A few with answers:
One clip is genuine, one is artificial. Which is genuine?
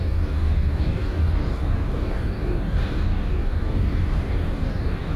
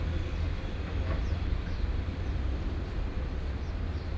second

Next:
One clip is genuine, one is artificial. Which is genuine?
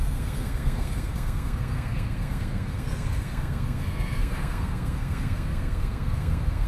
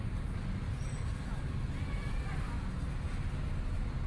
second